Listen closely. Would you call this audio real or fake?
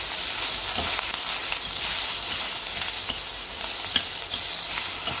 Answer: real